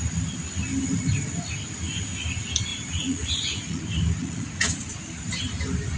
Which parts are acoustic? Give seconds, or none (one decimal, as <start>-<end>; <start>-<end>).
0.0-2.7; 3.8-4.2; 4.9-6.0